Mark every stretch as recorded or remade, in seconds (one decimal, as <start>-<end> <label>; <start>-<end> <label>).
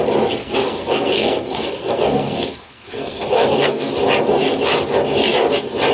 0.0-0.4 recorded; 0.4-3.9 remade; 3.9-5.9 recorded